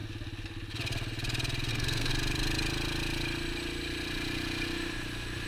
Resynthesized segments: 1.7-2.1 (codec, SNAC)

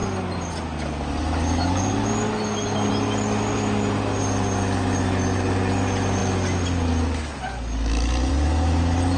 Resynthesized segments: none